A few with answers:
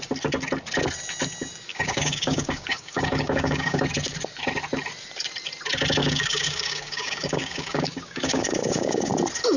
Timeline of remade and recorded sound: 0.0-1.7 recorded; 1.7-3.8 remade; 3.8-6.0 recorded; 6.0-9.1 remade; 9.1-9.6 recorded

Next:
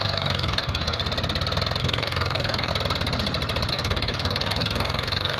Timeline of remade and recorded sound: 0.0-1.0 remade; 1.0-1.8 recorded; 1.8-2.7 remade; 2.7-3.7 recorded; 3.7-5.4 remade

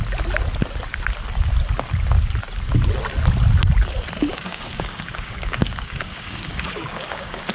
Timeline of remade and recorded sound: 0.0-4.3 recorded; 4.3-7.5 remade

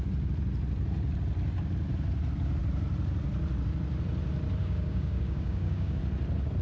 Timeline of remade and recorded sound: 0.0-4.6 recorded; 4.6-6.0 remade; 6.0-6.6 recorded